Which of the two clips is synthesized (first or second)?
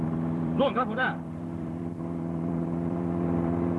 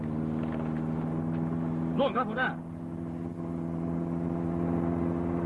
first